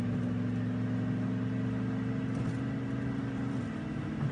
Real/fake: real